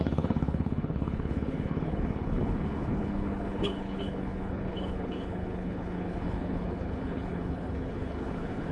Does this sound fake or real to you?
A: fake